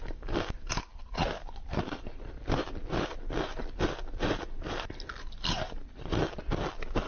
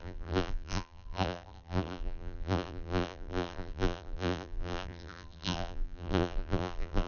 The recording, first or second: first